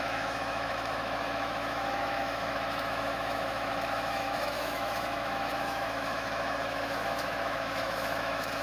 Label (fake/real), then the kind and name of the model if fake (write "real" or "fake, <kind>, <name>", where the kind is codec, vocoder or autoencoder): fake, autoencoder, DAC-VAE